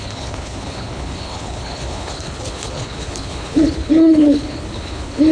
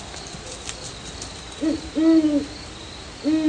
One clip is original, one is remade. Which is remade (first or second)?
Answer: first